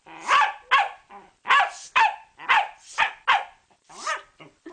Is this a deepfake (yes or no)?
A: no